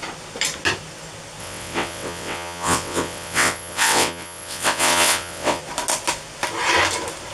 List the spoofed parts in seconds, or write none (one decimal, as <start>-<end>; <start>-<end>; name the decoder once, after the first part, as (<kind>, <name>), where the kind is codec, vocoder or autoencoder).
1.4-5.6 (vocoder, WaveNeXt)